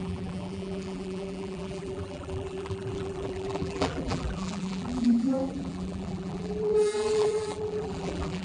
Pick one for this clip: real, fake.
fake